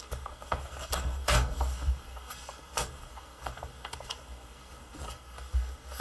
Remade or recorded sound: remade